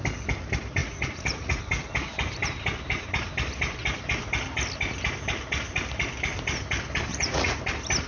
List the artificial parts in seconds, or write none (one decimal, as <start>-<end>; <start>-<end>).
0.8-1.6; 7.1-7.6